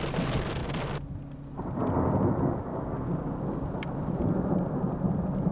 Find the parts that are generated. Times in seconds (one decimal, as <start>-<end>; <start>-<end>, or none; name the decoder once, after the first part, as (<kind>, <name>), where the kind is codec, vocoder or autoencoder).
2.7-3.4 (codec, DAC)